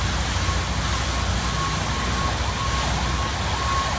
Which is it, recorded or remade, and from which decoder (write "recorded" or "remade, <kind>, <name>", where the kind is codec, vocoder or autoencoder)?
recorded